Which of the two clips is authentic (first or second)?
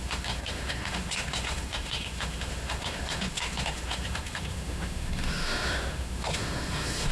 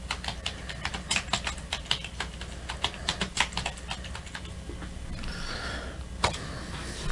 second